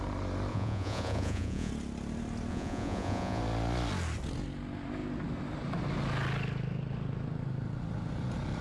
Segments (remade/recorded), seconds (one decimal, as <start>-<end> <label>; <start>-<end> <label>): 0.0-0.5 recorded; 0.5-1.7 remade; 1.7-2.5 recorded; 2.5-3.4 remade; 3.4-8.6 recorded

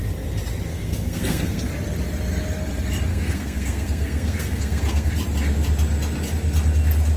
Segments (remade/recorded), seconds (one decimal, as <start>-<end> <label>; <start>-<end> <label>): 0.0-0.7 recorded; 0.7-1.7 remade; 1.7-3.1 recorded; 3.1-5.1 remade; 5.1-7.2 recorded

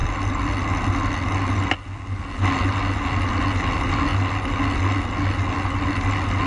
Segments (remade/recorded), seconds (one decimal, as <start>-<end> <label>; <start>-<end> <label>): 0.0-6.5 recorded

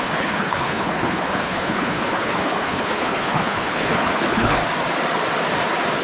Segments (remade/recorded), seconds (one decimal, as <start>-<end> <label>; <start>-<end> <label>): 0.0-4.6 remade; 4.6-6.0 recorded

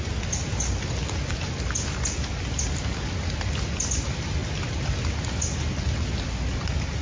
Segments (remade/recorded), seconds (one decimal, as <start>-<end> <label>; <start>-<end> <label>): 0.0-7.0 recorded

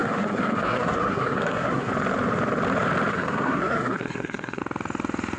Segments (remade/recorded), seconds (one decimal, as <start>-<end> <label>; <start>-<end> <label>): 0.0-1.9 remade; 1.9-3.1 recorded; 3.1-4.6 remade; 4.6-5.4 recorded